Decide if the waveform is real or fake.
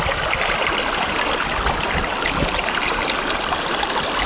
real